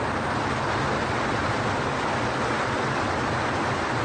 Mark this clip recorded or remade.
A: recorded